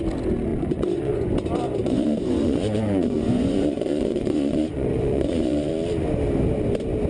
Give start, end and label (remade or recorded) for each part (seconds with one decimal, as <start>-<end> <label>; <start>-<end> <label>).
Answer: 0.0-0.5 recorded; 0.5-1.3 remade; 1.3-1.8 recorded; 1.8-5.7 remade; 5.7-7.1 recorded